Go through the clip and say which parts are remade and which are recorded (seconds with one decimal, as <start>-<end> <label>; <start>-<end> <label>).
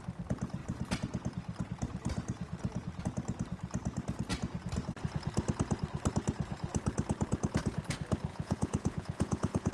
0.0-8.3 recorded; 8.3-9.7 remade